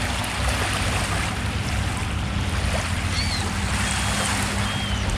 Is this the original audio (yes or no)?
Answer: yes